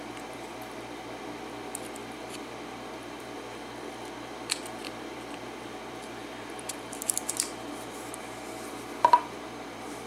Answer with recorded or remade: remade